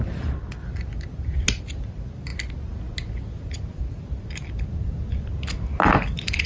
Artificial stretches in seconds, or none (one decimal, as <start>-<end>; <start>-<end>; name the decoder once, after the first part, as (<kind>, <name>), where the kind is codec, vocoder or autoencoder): none